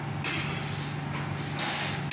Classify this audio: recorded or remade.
recorded